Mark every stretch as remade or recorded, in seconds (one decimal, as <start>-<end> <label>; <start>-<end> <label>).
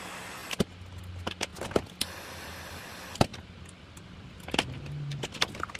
0.0-5.8 recorded